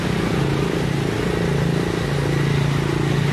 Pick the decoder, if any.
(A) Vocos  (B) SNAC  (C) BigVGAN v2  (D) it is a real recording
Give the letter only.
D